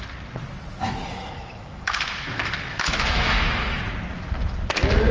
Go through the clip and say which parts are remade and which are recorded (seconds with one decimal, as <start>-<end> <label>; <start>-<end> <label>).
0.0-0.7 recorded; 0.7-3.8 remade; 3.8-5.1 recorded